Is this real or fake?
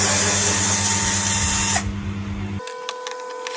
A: real